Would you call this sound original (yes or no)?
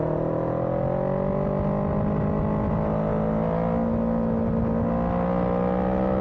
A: yes